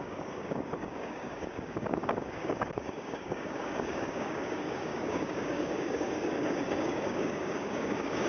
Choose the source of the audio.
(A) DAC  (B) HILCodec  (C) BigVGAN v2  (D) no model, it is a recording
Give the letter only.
A